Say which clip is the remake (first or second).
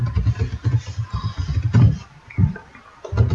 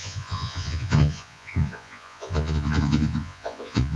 second